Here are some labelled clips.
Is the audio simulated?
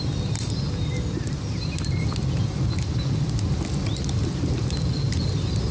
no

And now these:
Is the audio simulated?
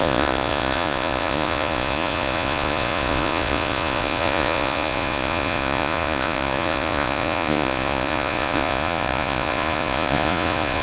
yes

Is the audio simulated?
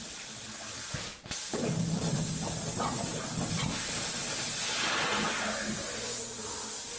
no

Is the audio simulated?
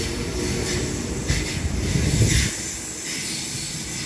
no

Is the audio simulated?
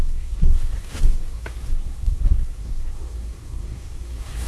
yes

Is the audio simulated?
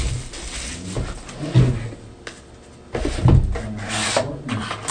no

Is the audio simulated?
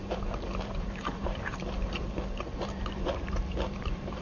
yes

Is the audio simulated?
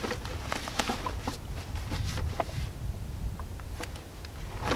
no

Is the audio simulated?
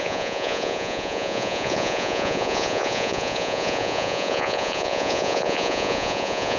yes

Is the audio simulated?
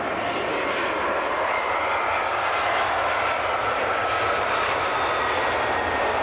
no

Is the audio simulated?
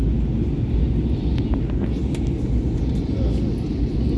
no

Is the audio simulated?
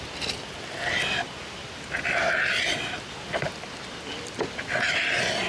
no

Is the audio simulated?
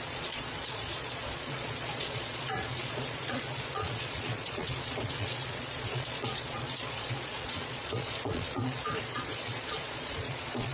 yes